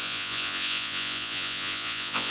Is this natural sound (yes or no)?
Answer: no